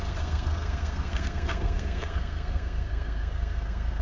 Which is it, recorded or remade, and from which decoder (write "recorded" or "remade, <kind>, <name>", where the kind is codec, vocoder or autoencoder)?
remade, codec, SNAC